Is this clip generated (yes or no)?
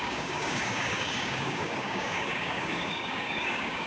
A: yes